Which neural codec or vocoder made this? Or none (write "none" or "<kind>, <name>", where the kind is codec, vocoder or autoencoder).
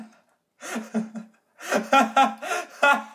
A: none